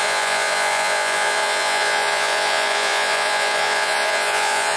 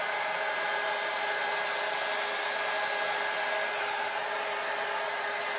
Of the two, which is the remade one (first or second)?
first